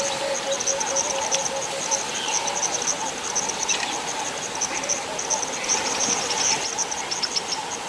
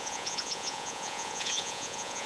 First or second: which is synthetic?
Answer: second